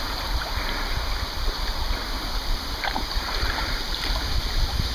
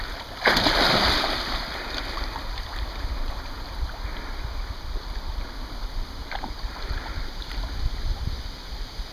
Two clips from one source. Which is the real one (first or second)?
second